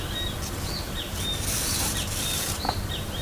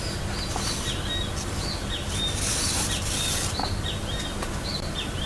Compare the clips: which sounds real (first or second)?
second